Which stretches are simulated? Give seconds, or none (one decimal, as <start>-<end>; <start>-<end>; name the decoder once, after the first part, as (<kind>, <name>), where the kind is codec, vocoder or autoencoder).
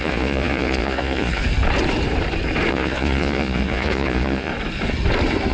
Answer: 0.0-1.4 (vocoder, Vocos); 2.7-4.5